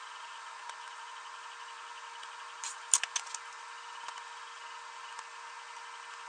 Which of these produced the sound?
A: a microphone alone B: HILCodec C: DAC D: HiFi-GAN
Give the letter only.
A